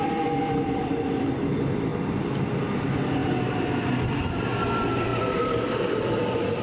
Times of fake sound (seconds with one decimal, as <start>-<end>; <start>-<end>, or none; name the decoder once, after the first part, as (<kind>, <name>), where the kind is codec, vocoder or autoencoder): 0.0-1.9 (vocoder, BigVGAN v2); 2.6-3.2; 4.1-6.6